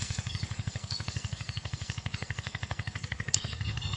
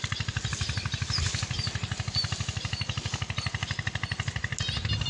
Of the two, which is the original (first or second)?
second